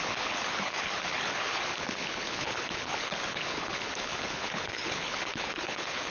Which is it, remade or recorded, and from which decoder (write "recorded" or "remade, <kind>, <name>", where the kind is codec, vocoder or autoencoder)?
remade, codec, HILCodec